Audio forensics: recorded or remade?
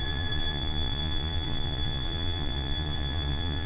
remade